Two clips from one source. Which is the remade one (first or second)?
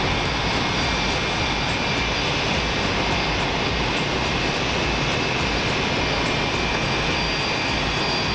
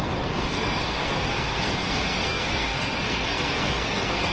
second